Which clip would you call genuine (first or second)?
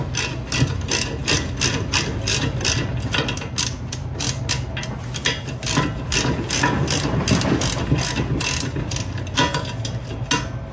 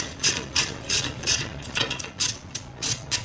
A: first